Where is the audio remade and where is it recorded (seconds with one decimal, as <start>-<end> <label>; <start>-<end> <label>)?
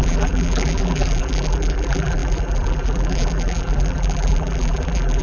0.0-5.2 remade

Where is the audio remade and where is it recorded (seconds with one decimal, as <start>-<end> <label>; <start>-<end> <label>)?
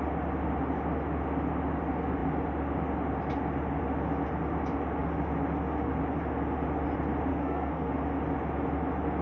0.0-7.3 recorded; 7.3-7.9 remade; 7.9-9.2 recorded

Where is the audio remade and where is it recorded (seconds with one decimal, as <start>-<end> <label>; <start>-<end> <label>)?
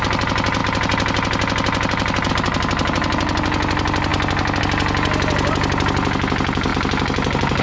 0.0-7.6 recorded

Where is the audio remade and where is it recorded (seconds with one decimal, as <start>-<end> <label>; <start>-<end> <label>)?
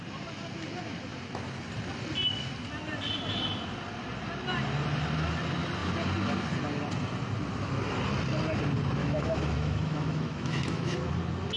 0.0-9.0 recorded; 9.0-11.1 remade; 11.1-11.6 recorded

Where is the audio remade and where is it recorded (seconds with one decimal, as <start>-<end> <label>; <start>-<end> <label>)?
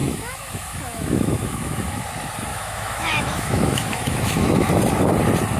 0.0-2.0 remade; 2.0-2.5 recorded; 2.5-4.7 remade; 4.7-5.6 recorded